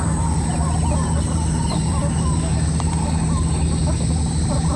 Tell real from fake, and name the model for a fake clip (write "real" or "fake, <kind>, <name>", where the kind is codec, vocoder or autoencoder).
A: real